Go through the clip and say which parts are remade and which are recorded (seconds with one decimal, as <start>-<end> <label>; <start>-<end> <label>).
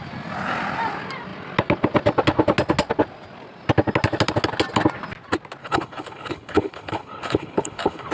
0.0-5.6 recorded; 5.6-8.1 remade